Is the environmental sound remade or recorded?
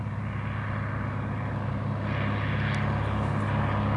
recorded